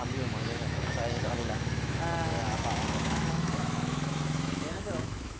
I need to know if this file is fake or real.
fake